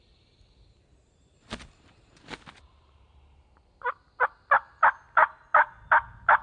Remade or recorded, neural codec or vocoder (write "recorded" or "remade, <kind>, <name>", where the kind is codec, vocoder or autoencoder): recorded